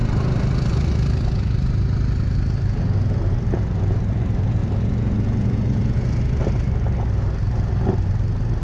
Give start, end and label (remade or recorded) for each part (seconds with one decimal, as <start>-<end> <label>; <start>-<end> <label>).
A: 0.0-4.6 recorded; 4.6-6.2 remade; 6.2-8.6 recorded